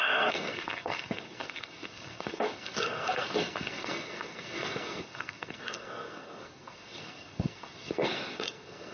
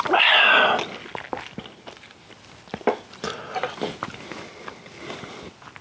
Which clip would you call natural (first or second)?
second